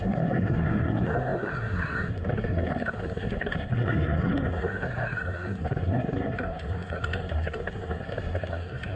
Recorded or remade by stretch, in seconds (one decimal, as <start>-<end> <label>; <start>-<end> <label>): 0.0-9.0 remade